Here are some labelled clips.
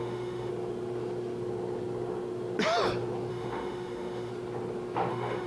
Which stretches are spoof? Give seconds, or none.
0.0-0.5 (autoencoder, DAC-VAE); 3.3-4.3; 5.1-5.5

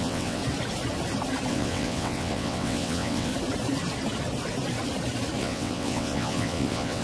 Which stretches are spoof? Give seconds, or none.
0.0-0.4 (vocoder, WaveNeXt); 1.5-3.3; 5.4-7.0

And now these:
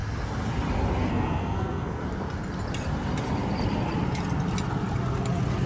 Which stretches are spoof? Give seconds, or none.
1.1-2.0 (codec, SNAC)